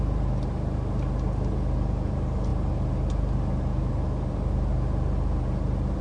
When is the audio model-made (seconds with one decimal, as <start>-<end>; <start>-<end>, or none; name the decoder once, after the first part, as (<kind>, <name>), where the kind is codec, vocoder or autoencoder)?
none